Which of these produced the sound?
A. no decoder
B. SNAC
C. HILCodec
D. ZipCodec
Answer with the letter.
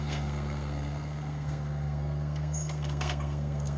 B